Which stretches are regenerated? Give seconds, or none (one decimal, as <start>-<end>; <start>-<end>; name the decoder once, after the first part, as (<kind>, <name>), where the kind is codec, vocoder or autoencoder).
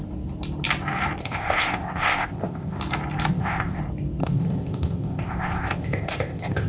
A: 1.2-2.8 (codec, ZipCodec); 3.3-3.8; 4.2-6.7